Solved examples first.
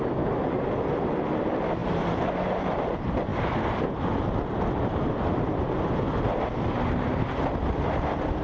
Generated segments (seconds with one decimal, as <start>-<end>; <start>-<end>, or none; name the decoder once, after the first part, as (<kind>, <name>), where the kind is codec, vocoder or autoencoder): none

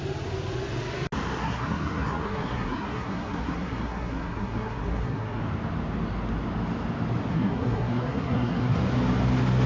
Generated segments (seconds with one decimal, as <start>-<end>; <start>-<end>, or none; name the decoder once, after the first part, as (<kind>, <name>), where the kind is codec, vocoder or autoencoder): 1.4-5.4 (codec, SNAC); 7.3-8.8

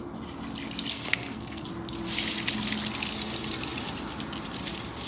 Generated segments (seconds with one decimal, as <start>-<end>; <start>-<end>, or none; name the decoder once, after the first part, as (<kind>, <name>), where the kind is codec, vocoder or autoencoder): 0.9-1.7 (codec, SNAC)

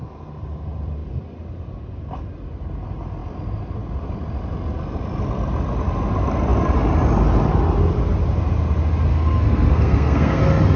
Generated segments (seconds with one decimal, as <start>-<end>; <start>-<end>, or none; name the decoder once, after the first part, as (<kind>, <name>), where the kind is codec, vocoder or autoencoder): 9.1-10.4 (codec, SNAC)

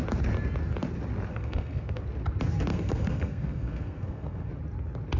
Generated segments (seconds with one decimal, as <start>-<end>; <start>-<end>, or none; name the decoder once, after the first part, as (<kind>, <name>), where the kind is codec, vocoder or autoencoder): 1.3-2.0 (codec, SNAC); 2.7-4.5

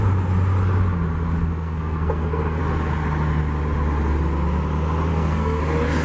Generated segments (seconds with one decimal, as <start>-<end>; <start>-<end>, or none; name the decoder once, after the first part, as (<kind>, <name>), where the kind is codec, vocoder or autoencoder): 1.4-2.6 (codec, SNAC); 5.1-5.6

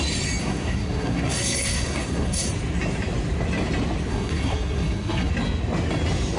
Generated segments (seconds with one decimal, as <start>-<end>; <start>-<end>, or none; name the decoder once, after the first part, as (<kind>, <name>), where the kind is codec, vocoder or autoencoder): 0.4-2.5 (codec, SNAC); 4.1-5.3

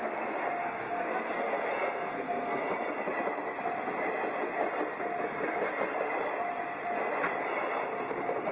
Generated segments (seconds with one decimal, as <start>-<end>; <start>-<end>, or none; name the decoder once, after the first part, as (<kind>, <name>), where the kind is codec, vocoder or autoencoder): 0.6-2.7 (codec, SNAC)